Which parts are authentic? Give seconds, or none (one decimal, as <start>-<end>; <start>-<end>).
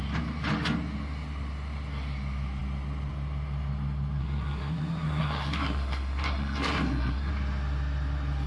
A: 0.0-4.2; 7.3-8.5